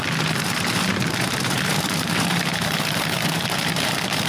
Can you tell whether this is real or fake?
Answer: fake